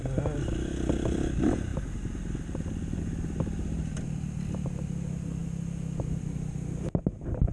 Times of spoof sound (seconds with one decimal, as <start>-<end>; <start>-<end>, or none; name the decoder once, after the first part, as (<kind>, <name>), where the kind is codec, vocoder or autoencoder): none